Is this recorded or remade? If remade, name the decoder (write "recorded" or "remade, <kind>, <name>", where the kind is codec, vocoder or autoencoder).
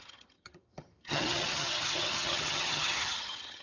remade, vocoder, HiFi-GAN